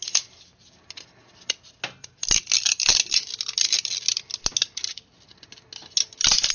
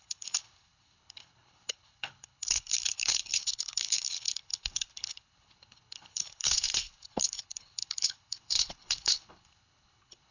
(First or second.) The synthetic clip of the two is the second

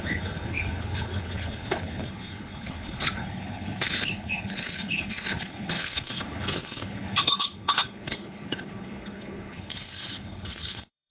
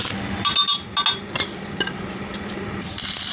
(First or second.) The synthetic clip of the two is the first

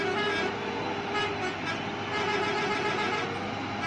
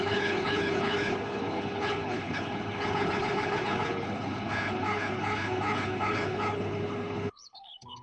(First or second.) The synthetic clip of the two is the second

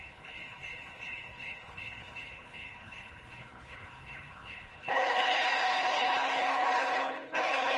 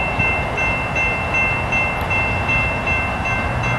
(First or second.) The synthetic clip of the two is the first